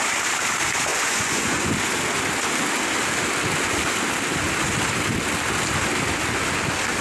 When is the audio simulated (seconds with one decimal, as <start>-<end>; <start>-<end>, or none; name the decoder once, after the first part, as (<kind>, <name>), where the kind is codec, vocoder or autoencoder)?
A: 0.9-1.7 (vocoder, Vocos)